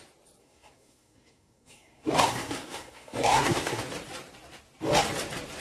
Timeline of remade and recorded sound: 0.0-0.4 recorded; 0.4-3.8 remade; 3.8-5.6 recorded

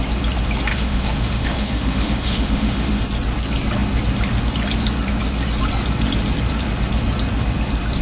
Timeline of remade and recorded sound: 0.0-0.7 recorded; 0.7-3.0 remade; 3.0-8.0 recorded

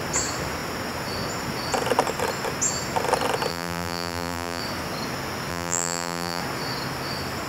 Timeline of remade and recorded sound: 0.0-3.5 recorded; 3.5-4.6 remade; 4.6-5.5 recorded; 5.5-6.4 remade; 6.4-7.5 recorded